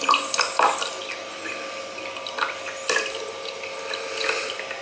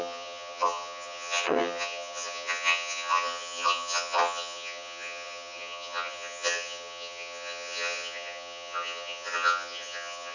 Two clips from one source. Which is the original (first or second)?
first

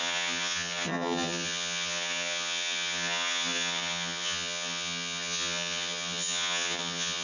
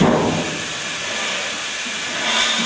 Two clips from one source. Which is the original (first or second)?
second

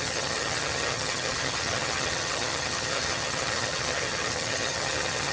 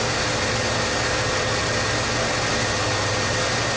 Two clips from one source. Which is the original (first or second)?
second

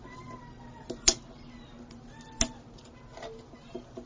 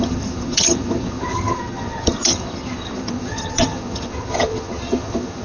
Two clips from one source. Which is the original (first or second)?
first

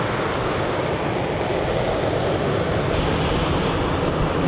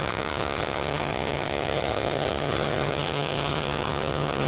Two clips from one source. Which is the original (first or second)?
first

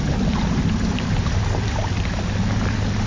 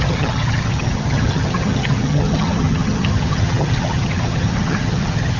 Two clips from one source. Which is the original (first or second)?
first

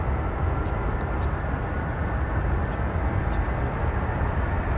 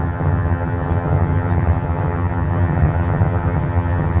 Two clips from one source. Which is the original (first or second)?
first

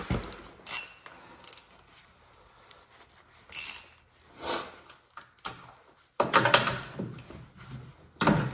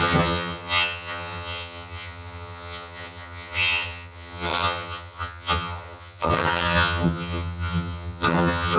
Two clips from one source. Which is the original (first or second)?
first